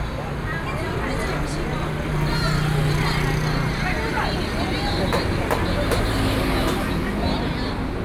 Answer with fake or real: real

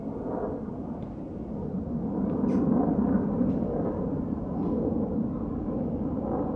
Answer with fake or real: real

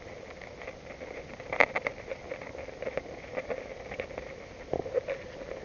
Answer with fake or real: real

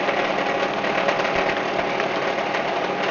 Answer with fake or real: real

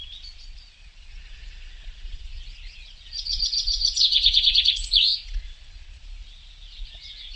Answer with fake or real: fake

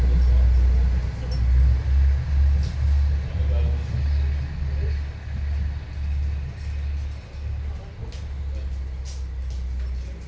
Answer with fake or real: real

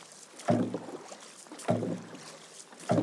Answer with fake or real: real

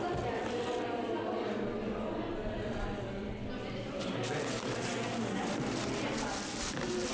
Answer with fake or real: real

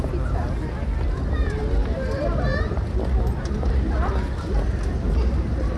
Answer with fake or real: real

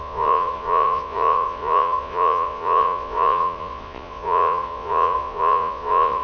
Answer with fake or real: fake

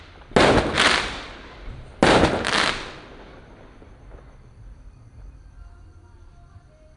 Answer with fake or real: real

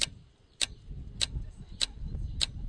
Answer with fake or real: real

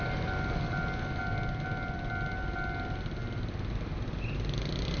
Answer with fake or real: real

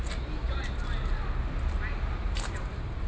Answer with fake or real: real